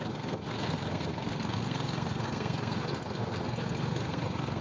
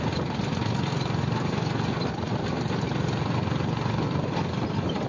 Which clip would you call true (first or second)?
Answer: second